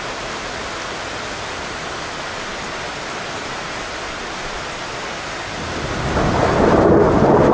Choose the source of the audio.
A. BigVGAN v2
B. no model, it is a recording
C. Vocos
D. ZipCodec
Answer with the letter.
B